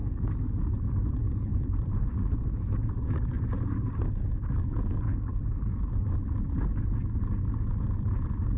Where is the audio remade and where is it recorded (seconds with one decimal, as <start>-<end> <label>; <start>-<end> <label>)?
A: 0.0-1.5 recorded; 1.5-3.4 remade; 3.4-8.6 recorded